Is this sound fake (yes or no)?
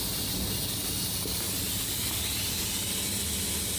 no